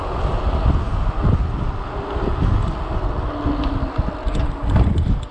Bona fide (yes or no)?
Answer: yes